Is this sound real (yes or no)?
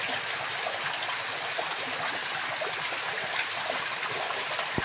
yes